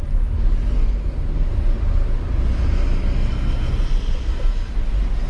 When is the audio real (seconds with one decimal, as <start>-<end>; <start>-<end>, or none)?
0.0-5.3